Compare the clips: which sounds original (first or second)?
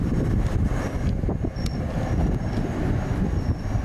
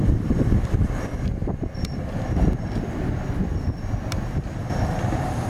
first